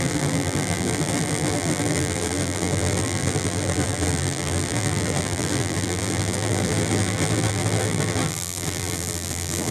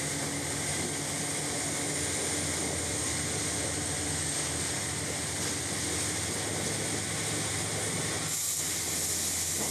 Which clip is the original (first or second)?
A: second